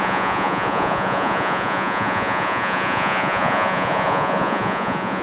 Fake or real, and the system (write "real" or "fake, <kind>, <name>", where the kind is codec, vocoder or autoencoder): fake, vocoder, Vocos